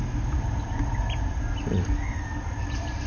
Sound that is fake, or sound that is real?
fake